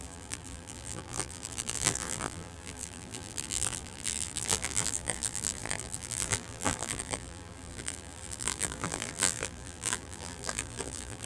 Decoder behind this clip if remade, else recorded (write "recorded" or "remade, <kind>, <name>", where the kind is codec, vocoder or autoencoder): remade, vocoder, BigVGAN v2